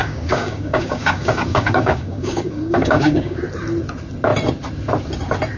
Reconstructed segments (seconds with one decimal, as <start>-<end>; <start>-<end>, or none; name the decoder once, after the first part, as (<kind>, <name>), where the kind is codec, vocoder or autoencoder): 0.0-3.4 (codec, DAC)